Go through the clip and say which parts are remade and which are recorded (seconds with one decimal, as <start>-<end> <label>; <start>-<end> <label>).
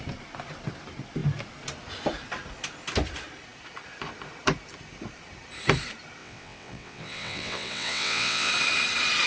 0.0-6.2 recorded; 6.2-8.5 remade; 8.5-9.3 recorded